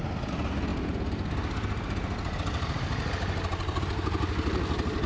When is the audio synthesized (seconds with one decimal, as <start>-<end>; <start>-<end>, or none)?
none